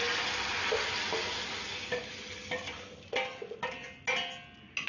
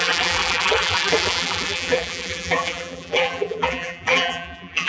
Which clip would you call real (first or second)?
first